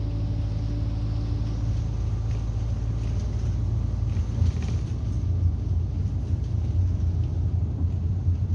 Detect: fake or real real